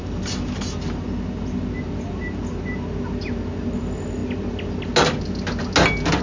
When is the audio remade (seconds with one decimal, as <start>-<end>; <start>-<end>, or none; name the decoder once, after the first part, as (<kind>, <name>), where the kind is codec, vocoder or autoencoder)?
none